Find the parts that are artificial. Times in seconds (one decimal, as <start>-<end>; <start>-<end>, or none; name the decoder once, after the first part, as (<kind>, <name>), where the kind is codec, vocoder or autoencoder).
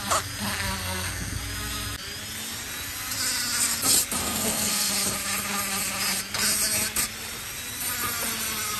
0.8-1.4 (codec, SNAC); 4.2-4.9